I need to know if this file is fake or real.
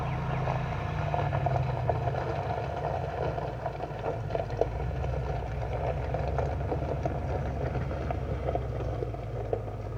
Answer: real